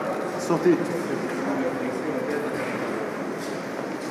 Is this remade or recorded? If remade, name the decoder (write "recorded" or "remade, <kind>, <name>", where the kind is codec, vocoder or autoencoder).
recorded